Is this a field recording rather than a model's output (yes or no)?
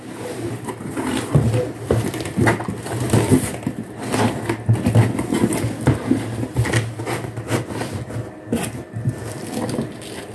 yes